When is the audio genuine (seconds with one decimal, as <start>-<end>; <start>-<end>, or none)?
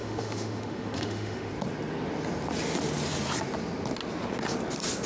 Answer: 1.5-5.1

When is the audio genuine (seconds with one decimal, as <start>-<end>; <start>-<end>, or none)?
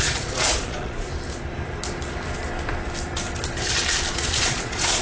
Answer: 1.1-4.1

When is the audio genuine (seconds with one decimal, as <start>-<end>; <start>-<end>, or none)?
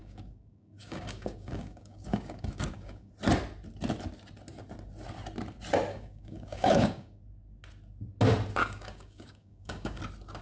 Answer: 3.1-5.9; 7.2-8.6; 10.0-10.4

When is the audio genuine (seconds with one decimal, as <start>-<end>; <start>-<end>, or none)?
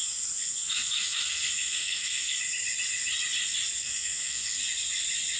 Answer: 2.4-3.8; 4.6-5.4